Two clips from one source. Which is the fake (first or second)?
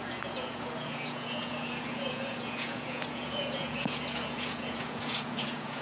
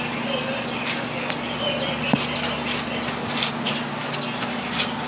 first